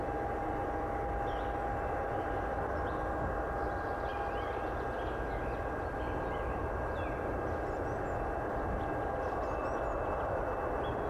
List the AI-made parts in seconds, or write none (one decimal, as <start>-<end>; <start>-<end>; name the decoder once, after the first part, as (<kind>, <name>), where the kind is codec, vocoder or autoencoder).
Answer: none